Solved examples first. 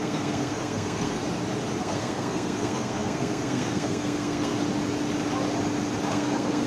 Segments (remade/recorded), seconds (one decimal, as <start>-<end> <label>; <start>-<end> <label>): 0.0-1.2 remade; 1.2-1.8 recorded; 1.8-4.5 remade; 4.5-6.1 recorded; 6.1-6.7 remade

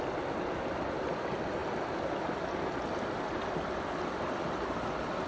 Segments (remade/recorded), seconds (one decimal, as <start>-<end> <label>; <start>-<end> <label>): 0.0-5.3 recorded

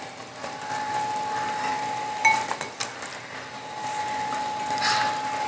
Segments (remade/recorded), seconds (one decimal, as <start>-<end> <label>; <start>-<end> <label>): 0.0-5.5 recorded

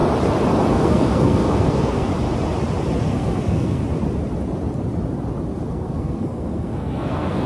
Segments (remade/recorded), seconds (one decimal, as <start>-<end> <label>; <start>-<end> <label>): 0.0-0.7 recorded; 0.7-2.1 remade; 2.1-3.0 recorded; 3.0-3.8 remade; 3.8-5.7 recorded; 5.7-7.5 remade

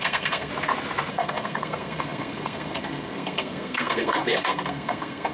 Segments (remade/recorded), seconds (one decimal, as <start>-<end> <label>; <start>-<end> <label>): 0.0-0.5 remade; 0.5-1.1 recorded; 1.1-5.3 remade

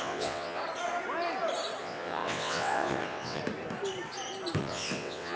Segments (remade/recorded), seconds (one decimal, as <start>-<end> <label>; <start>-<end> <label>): 0.0-0.6 remade; 0.6-1.8 recorded; 1.8-3.4 remade; 3.4-4.6 recorded; 4.6-5.4 remade

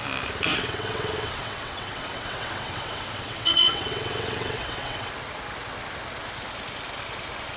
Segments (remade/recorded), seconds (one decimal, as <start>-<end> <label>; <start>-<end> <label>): 0.0-0.5 recorded; 0.5-5.1 remade; 5.1-7.6 recorded